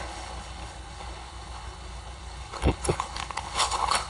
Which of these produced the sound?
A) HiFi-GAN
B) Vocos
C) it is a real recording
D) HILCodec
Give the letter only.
D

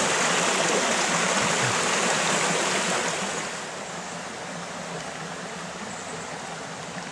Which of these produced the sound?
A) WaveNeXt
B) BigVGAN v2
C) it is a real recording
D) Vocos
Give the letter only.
C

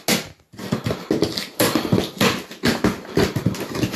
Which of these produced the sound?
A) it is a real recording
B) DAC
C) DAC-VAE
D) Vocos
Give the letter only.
A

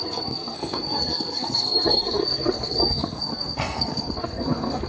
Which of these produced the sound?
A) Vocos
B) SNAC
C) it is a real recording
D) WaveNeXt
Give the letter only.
B